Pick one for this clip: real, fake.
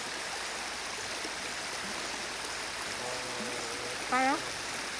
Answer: real